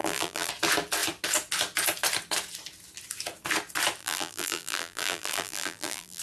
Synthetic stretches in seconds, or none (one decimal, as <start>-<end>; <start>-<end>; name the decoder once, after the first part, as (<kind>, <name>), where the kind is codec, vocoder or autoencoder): 0.0-0.5 (vocoder, BigVGAN v2); 4.0-6.2